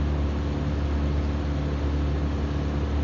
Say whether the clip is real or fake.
real